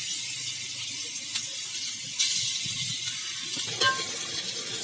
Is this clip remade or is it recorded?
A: recorded